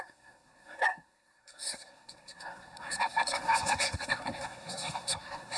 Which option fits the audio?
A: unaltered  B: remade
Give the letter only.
B